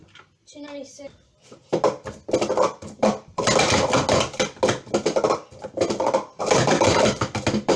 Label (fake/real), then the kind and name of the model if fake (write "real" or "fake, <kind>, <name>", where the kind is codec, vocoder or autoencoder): real